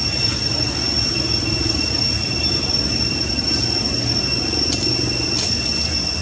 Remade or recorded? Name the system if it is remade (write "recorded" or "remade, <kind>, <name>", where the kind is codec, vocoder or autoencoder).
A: recorded